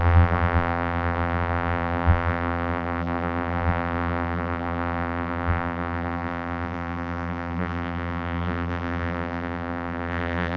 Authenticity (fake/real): fake